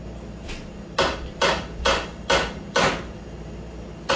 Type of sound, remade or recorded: recorded